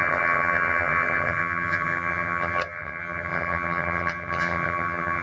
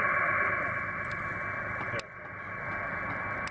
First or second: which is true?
second